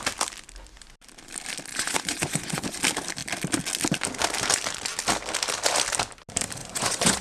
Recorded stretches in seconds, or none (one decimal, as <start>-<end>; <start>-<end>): 0.0-1.7; 2.8-6.6